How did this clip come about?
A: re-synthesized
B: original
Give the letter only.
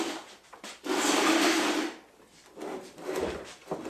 A